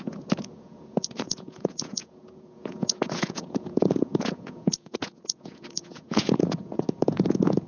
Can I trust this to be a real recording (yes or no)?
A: no